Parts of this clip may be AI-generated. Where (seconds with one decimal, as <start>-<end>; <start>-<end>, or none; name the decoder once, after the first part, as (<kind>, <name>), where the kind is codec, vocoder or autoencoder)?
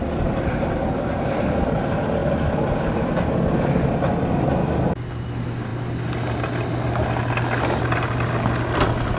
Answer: none